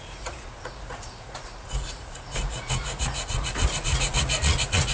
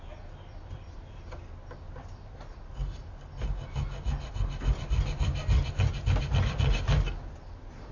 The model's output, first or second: first